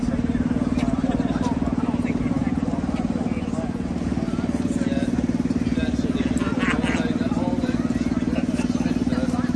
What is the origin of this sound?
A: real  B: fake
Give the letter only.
A